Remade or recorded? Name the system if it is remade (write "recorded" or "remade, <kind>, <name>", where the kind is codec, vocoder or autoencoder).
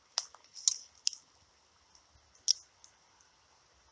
recorded